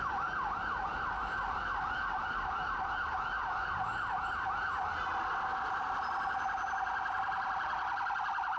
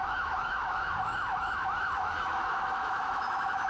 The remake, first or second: second